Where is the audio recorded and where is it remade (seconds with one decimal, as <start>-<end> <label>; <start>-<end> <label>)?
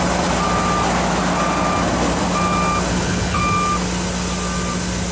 0.0-2.9 recorded; 2.9-3.4 remade; 3.4-5.1 recorded